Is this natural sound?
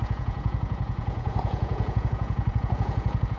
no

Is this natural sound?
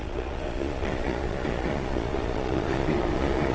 no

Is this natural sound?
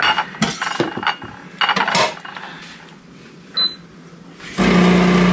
yes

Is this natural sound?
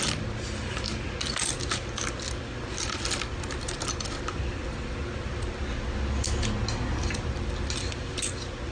yes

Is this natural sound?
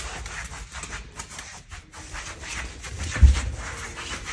yes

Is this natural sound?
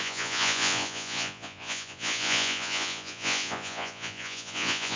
no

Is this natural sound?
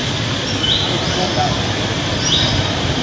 yes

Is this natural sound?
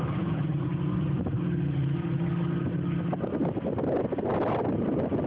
yes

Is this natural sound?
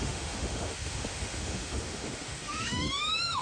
no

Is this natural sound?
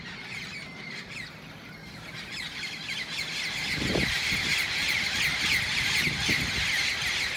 yes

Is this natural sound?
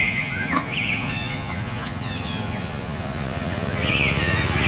no